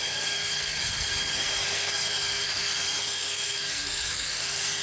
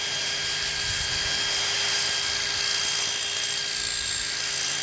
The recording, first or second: second